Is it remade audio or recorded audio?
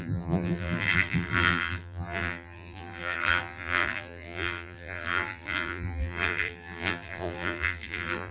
remade